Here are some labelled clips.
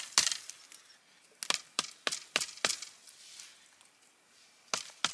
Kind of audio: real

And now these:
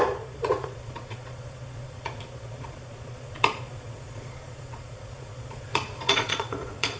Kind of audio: fake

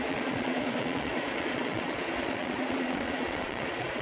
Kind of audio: fake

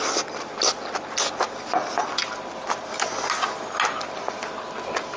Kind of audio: real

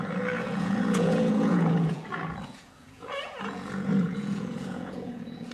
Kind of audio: fake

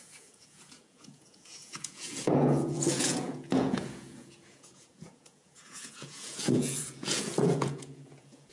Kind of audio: fake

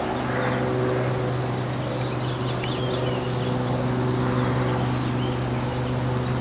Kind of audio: real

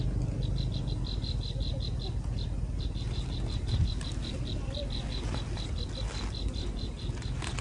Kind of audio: real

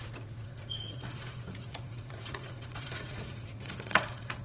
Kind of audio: fake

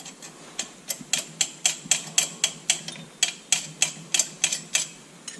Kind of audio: real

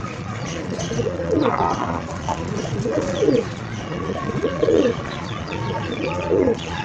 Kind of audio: fake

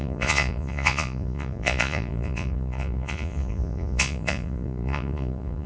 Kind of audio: fake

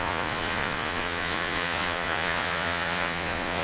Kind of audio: fake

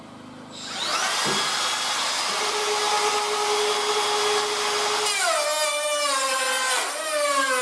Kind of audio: real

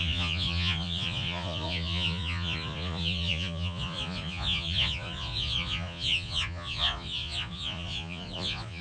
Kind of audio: fake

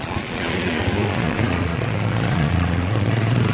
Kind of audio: fake